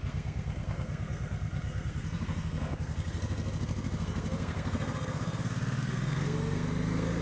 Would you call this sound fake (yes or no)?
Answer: yes